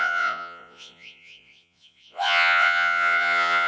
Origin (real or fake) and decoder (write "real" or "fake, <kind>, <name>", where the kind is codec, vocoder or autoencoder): fake, vocoder, Vocos